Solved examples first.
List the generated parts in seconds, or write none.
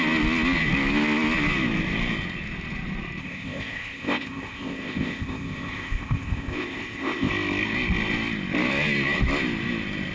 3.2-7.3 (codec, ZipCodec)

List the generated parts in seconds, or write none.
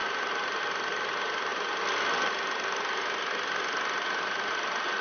none